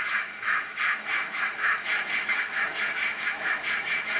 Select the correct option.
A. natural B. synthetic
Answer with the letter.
B